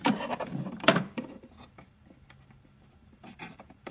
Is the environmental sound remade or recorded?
remade